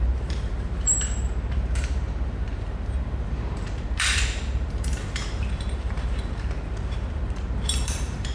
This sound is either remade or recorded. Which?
remade